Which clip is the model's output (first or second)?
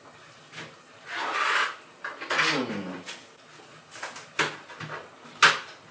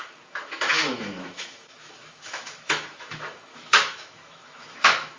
second